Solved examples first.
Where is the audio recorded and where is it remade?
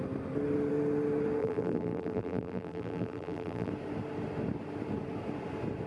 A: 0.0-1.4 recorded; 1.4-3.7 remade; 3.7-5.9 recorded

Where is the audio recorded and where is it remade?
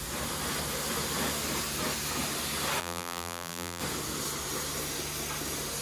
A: 0.0-2.8 recorded; 2.8-3.8 remade; 3.8-5.8 recorded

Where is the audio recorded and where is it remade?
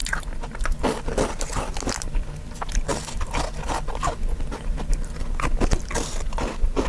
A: 0.0-0.6 remade; 0.6-6.9 recorded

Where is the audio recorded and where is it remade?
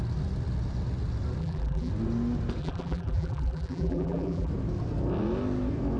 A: 0.0-1.4 recorded; 1.4-1.9 remade; 1.9-2.6 recorded; 2.6-4.5 remade; 4.5-6.0 recorded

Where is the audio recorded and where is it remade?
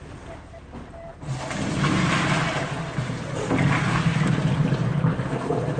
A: 0.0-5.8 remade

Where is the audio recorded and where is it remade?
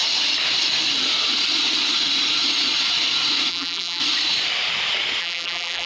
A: 0.0-3.5 recorded; 3.5-4.0 remade; 4.0-5.2 recorded; 5.2-5.9 remade